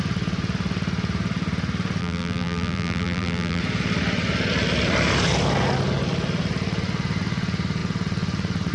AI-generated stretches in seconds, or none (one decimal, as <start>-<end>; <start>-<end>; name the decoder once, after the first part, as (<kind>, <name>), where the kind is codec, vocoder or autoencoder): 2.0-3.6 (vocoder, BigVGAN v2)